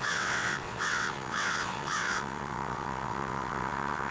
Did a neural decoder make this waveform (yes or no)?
yes